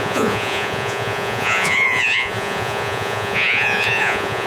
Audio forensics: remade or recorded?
remade